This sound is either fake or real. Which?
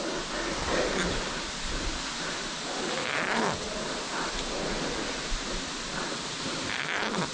fake